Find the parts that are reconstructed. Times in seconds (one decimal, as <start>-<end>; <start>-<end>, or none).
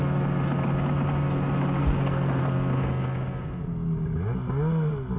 1.8-2.4